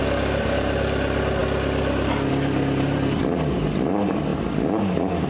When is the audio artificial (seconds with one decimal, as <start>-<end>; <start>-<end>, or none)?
none